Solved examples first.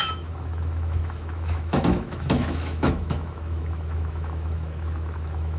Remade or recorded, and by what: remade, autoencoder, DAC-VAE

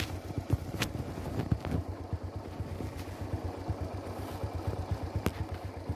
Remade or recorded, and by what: recorded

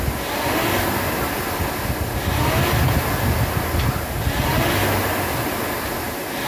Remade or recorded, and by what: recorded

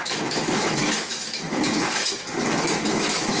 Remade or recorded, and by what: remade, autoencoder, DAC-VAE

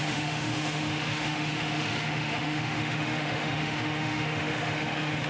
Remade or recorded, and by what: remade, autoencoder, DAC-VAE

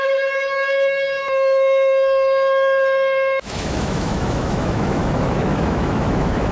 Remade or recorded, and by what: remade, autoencoder, DAC-VAE